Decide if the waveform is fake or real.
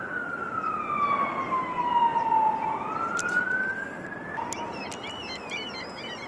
real